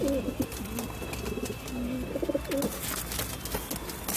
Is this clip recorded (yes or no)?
yes